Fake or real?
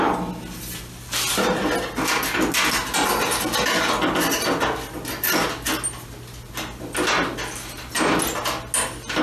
real